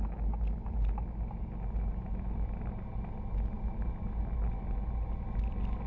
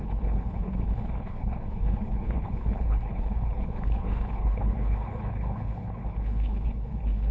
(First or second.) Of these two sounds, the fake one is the second